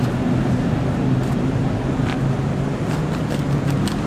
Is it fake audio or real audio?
real